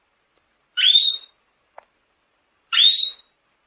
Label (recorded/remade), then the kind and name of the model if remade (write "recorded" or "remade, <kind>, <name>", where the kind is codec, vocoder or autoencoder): recorded